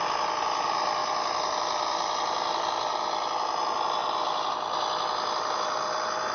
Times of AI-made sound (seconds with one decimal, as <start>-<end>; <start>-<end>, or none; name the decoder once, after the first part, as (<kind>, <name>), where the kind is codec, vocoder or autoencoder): none